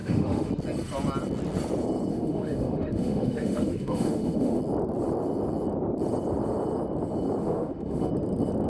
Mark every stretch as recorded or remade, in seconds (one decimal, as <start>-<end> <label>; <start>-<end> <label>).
0.0-0.5 remade; 0.5-2.1 recorded; 2.1-4.6 remade; 4.6-7.4 recorded; 7.4-8.1 remade; 8.1-8.7 recorded

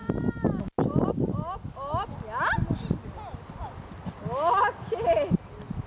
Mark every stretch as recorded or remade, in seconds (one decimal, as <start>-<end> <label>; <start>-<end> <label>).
0.0-5.9 recorded

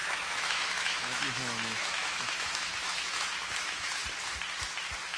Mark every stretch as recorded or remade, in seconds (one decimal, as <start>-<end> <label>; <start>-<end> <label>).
0.0-4.0 remade; 4.0-5.2 recorded

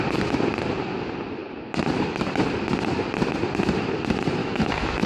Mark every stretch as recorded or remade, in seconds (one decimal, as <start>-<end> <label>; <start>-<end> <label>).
0.0-4.4 recorded; 4.4-5.1 remade

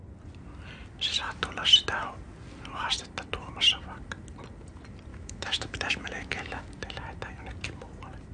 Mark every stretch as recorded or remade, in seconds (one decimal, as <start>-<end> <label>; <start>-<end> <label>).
0.0-5.1 recorded; 5.1-6.6 remade; 6.6-8.3 recorded